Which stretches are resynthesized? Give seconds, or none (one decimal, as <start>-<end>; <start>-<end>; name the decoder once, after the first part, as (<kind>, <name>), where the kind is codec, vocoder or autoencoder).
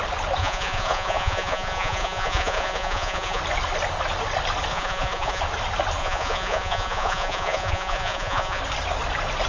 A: 0.4-3.4 (vocoder, Vocos); 4.7-5.4; 6.0-8.6